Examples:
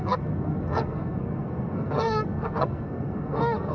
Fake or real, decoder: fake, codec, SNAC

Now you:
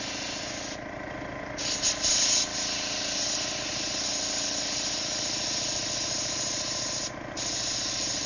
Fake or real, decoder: real